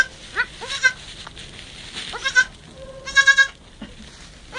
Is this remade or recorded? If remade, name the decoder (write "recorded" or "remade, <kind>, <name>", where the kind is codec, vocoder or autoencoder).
recorded